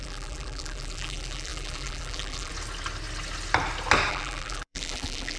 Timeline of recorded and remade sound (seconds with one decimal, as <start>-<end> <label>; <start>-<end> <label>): 0.0-2.5 remade; 2.5-4.1 recorded; 4.1-5.4 remade